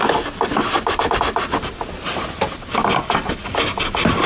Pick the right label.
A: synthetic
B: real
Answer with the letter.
B